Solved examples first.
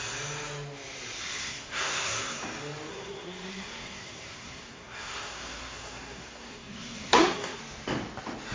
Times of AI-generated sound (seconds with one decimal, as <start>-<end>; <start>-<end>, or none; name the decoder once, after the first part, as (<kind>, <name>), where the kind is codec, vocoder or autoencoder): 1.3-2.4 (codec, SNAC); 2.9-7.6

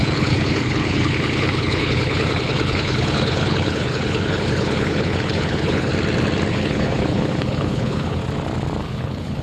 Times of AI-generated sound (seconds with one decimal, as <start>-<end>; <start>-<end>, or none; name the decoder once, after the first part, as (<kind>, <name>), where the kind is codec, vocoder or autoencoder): 0.0-5.9 (codec, HILCodec); 6.5-8.2; 8.8-9.4

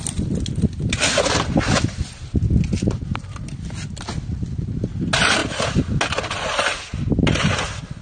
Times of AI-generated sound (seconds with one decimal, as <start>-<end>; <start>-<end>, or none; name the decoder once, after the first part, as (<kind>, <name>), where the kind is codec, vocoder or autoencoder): none